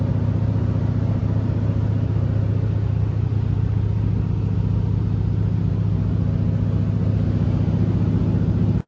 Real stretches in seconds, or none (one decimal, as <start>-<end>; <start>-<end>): 0.0-8.9